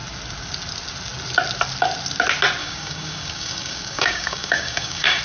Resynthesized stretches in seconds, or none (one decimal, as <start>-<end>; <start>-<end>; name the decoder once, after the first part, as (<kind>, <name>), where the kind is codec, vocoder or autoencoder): 2.6-5.2 (codec, DAC)